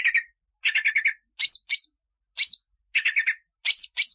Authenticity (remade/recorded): recorded